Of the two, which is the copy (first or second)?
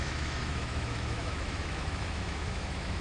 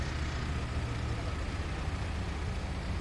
first